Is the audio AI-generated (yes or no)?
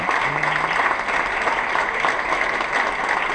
no